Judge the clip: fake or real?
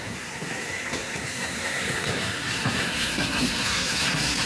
fake